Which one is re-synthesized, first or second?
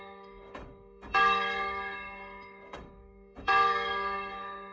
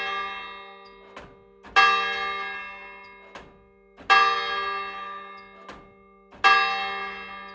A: first